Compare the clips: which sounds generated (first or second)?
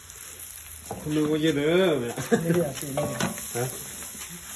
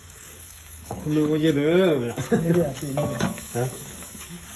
second